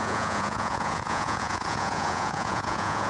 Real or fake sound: fake